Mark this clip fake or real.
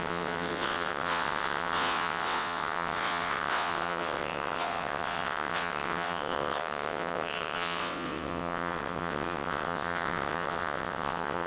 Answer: fake